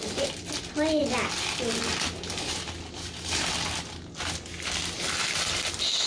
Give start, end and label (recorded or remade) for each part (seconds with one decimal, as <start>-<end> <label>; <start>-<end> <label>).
0.0-6.1 recorded